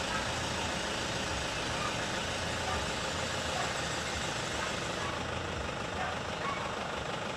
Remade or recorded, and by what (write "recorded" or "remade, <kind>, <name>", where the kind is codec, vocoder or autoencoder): recorded